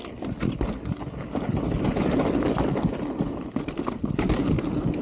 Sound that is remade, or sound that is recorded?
recorded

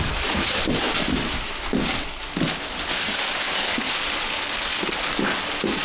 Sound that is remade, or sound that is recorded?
recorded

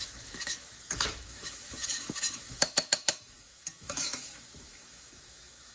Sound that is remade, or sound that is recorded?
remade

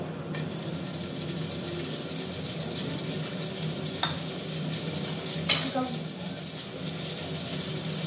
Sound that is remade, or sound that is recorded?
recorded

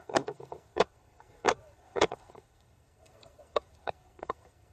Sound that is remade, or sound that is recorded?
remade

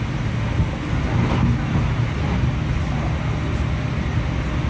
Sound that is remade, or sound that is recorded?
recorded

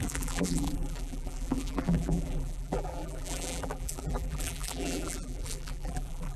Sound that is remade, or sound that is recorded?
remade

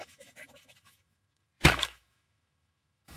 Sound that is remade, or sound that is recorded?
remade